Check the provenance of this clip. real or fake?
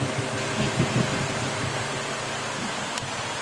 real